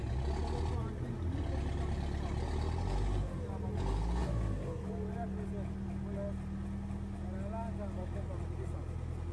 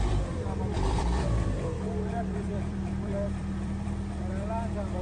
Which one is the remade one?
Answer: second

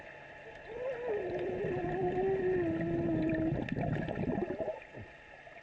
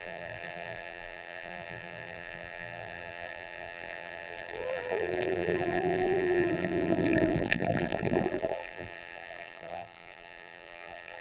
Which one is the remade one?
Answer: second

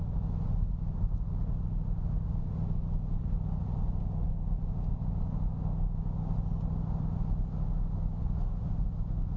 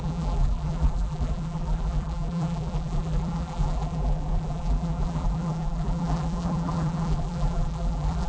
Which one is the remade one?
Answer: second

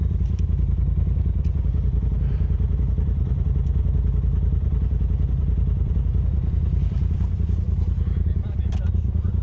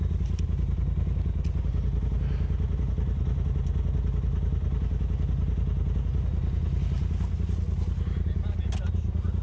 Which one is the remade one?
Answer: first